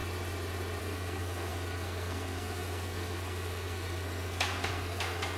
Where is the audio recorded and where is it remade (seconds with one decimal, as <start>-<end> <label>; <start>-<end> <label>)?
0.0-0.8 recorded; 0.8-5.4 remade